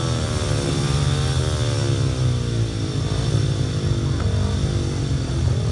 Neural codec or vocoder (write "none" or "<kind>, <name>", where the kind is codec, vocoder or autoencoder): none